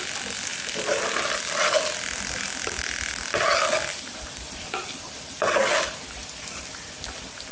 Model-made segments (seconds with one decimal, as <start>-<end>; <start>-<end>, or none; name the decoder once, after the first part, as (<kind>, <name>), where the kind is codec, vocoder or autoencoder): 0.5-1.0 (vocoder, BigVGAN v2)